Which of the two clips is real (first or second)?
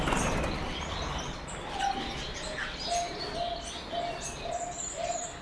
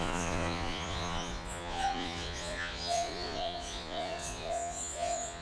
first